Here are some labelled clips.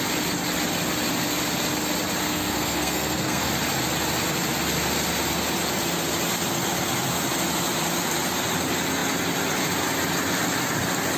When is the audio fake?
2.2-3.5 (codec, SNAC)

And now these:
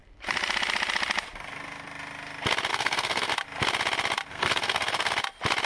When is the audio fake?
2.7-3.3 (codec, SNAC); 4.3-5.1

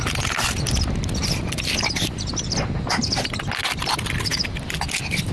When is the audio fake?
none

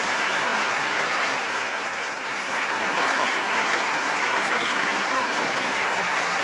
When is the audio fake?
0.0-6.4 (codec, SNAC)